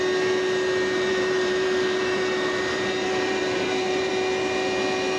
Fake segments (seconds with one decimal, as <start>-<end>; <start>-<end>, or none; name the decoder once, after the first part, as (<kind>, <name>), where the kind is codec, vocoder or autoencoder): 1.1-4.1 (vocoder, BigVGAN v2)